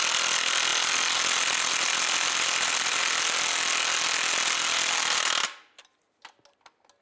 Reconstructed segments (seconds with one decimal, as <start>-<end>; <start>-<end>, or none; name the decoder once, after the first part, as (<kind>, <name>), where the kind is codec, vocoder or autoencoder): none